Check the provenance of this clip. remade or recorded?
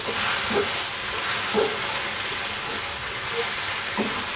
recorded